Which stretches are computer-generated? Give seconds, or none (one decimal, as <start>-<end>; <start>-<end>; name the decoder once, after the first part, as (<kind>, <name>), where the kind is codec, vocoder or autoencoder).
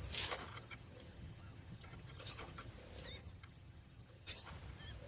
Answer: 0.5-2.7 (vocoder, HiFi-GAN); 3.2-4.5